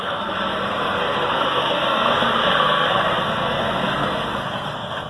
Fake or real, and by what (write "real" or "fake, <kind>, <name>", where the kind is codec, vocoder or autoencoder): fake, codec, SNAC